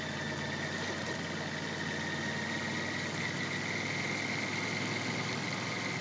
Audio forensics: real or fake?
real